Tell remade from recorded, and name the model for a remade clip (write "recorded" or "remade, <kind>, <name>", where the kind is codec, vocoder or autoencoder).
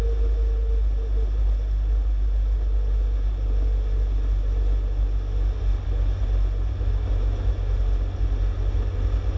recorded